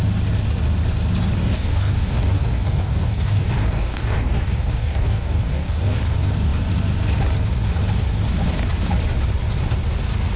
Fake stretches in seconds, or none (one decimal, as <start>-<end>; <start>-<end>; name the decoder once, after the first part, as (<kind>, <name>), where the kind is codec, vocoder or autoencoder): 1.4-6.0 (codec, DAC)